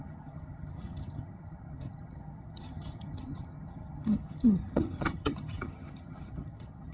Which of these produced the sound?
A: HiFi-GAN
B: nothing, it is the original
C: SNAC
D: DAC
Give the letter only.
A